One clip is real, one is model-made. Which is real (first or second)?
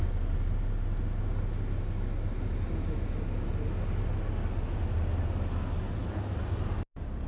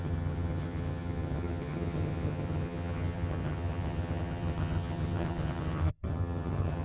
first